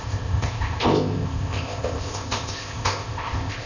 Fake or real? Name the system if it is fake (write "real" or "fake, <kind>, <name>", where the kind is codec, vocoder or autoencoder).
fake, codec, ZipCodec